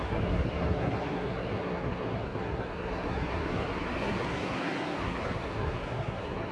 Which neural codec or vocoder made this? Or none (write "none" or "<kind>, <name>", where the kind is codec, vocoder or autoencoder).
codec, SNAC